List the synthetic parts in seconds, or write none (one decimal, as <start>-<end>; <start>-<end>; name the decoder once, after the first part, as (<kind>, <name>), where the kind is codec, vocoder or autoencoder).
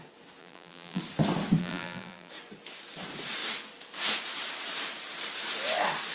0.4-1.0 (vocoder, BigVGAN v2); 1.6-2.3